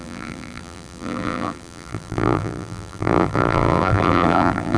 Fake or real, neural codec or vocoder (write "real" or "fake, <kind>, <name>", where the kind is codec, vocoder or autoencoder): fake, vocoder, BigVGAN v2